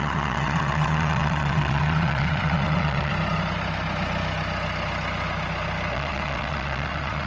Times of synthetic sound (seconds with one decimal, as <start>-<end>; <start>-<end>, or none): 0.0-3.1; 5.9-7.3